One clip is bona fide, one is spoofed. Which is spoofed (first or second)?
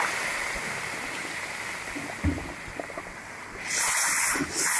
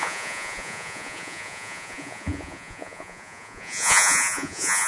second